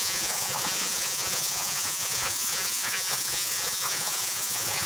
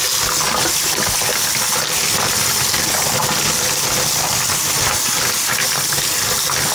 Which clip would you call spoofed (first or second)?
first